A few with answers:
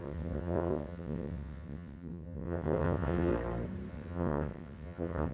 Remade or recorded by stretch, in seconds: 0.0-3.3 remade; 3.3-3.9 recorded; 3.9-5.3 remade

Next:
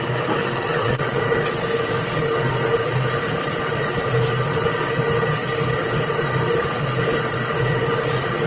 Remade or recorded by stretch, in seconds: 0.0-0.4 recorded; 0.4-1.2 remade; 1.2-8.5 recorded

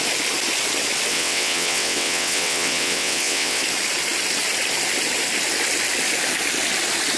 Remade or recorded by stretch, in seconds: 0.0-1.1 recorded; 1.1-3.6 remade; 3.6-7.2 recorded

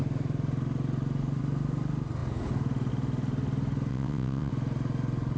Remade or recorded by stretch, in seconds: 0.0-3.9 recorded; 3.9-4.5 remade; 4.5-5.4 recorded

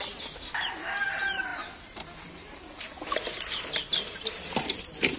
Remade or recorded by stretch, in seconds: 0.0-5.2 recorded